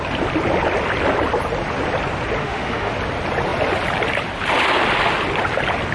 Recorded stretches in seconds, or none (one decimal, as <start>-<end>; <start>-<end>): 0.0-2.4; 2.9-5.9